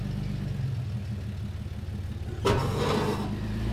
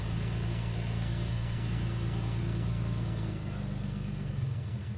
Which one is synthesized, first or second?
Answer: second